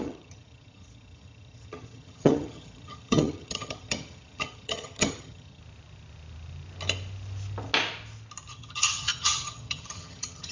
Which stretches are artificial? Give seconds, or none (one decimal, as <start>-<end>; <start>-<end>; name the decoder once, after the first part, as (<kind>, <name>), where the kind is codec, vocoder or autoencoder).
0.0-5.6 (vocoder, HiFi-GAN); 8.5-10.5